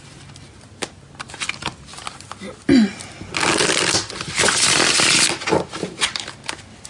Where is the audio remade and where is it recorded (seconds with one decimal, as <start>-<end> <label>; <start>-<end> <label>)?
0.0-6.9 recorded